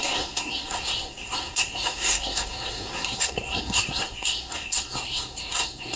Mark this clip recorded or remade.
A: remade